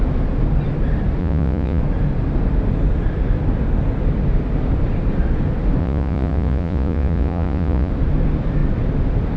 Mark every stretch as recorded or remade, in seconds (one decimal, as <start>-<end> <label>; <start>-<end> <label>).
0.0-1.2 recorded; 1.2-1.8 remade; 1.8-5.8 recorded; 5.8-7.9 remade; 7.9-9.4 recorded